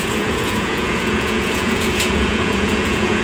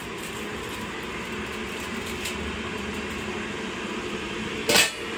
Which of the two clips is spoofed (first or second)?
first